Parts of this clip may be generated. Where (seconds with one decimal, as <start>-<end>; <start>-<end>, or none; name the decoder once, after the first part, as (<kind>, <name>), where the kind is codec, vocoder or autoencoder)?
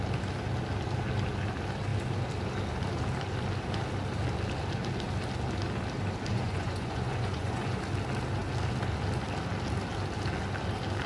6.3-7.8 (vocoder, Vocos)